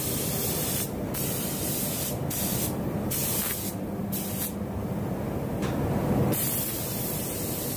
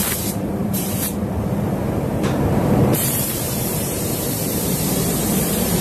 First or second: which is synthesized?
second